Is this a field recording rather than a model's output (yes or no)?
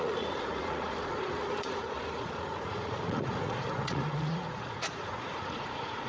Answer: no